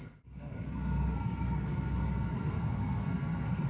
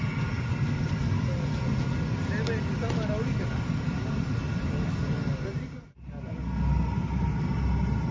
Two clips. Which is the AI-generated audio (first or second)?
first